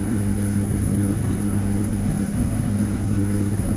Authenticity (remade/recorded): remade